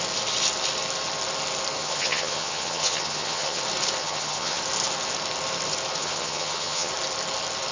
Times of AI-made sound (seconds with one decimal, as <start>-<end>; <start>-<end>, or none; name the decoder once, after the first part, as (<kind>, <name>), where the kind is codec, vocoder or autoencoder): 1.8-3.6 (vocoder, HiFi-GAN); 4.0-4.6; 6.0-6.9